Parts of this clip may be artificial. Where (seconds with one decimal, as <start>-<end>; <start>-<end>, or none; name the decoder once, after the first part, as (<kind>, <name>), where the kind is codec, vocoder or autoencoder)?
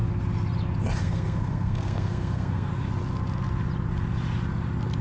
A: 1.0-2.7 (codec, SNAC)